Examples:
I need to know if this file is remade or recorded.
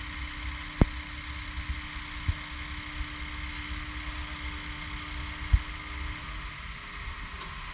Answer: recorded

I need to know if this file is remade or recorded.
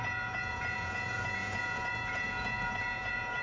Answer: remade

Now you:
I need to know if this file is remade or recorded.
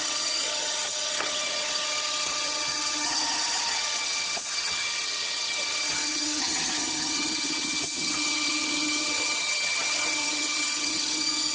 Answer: remade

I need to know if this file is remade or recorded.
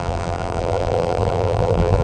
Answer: remade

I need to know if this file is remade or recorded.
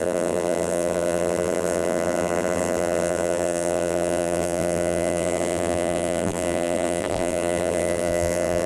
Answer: remade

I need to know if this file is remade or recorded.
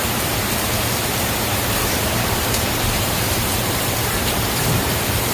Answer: remade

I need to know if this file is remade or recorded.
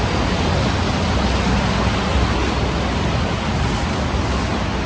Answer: recorded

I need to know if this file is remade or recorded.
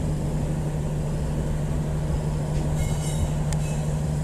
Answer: recorded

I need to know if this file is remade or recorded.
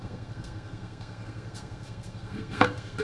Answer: remade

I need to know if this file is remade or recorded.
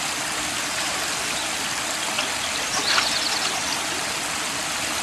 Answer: recorded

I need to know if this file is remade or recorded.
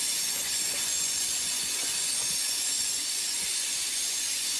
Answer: remade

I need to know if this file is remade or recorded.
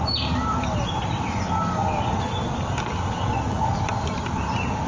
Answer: recorded